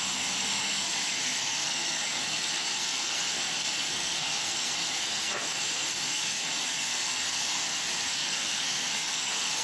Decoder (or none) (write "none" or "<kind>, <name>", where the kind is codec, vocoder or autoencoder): codec, SNAC